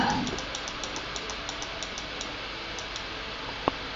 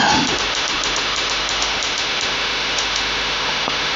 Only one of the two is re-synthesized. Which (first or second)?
second